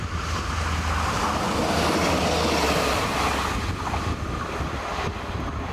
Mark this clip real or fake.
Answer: real